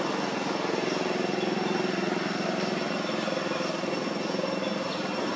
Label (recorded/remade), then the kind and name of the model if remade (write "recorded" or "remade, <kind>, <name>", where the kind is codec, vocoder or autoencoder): recorded